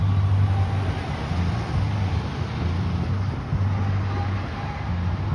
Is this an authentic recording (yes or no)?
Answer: yes